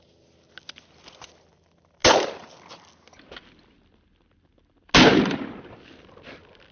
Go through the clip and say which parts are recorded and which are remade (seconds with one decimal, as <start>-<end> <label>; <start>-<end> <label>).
0.0-6.7 recorded